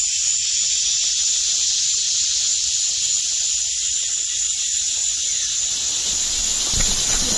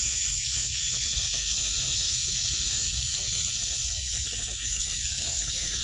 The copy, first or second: second